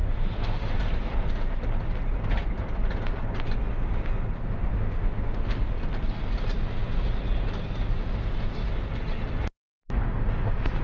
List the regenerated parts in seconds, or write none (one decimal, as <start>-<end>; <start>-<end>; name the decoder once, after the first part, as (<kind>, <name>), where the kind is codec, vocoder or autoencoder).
0.0-0.7 (autoencoder, DAC-VAE); 4.4-5.7